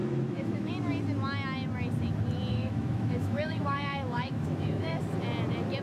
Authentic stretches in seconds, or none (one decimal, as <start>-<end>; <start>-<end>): 0.7-2.5; 5.0-5.8